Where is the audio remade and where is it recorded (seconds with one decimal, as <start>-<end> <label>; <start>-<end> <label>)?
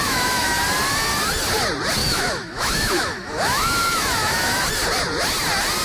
0.0-0.6 remade; 0.6-2.0 recorded; 2.0-4.6 remade; 4.6-5.8 recorded